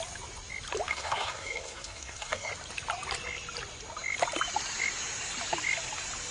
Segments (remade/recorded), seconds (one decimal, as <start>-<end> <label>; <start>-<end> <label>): 0.0-0.9 recorded; 0.9-2.5 remade; 2.5-6.3 recorded